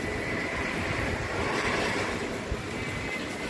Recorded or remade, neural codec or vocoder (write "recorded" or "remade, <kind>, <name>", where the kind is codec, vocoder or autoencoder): recorded